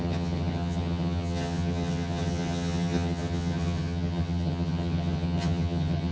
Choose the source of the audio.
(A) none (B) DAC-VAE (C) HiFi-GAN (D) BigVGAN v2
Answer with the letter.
C